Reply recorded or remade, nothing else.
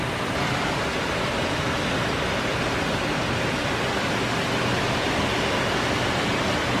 recorded